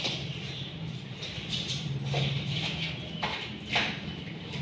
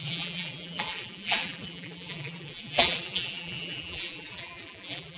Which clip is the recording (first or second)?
first